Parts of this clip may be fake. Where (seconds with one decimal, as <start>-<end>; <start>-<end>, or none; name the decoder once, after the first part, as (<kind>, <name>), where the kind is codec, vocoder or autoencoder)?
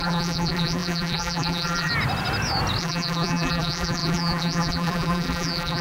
0.0-1.9 (vocoder, BigVGAN v2); 2.8-5.8